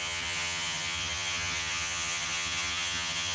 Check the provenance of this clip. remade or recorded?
remade